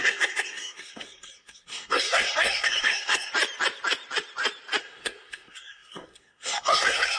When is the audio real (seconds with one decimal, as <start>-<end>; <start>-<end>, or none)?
3.3-4.8